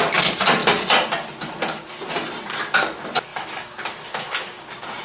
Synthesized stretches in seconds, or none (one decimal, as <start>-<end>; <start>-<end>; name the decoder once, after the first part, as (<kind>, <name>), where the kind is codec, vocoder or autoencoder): none